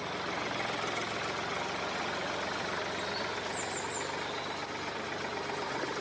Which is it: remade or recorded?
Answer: recorded